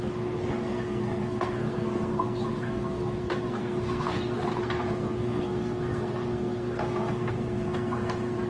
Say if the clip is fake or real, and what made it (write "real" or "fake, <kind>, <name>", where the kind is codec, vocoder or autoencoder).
fake, codec, SNAC